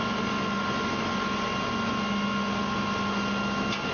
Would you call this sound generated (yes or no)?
no